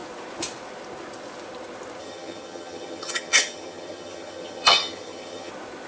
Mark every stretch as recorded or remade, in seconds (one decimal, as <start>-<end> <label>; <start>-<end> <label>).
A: 0.0-2.0 recorded; 2.0-5.5 remade; 5.5-5.9 recorded